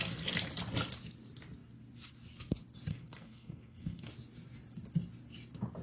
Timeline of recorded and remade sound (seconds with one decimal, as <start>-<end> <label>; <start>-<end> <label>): 0.0-2.9 recorded; 2.9-4.1 remade; 4.1-5.8 recorded